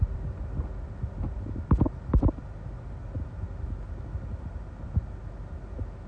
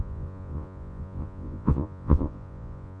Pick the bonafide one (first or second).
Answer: first